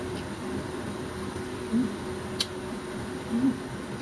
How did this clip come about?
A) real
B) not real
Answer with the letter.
A